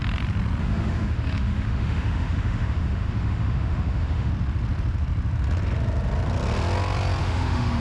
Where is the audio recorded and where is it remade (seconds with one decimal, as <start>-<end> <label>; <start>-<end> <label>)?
0.0-0.6 recorded; 0.6-4.3 remade; 4.3-7.2 recorded; 7.2-7.8 remade